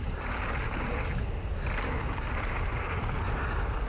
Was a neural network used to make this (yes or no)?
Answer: no